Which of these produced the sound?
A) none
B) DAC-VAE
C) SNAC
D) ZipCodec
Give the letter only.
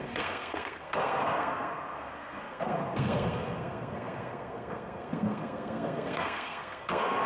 C